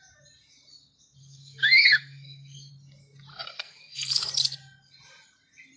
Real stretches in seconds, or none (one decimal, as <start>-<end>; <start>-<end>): 0.0-1.2; 2.7-3.3; 4.1-5.8